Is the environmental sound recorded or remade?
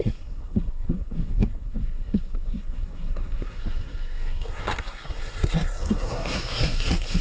remade